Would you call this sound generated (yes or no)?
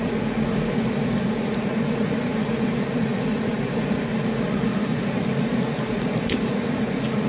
yes